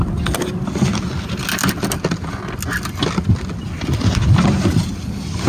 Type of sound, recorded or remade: recorded